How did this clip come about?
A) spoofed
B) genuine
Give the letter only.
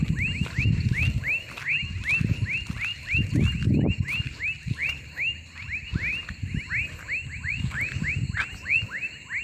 B